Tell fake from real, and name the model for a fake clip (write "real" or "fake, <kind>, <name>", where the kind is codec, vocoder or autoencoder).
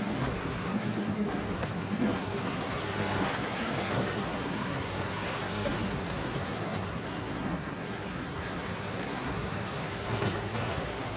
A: fake, codec, SNAC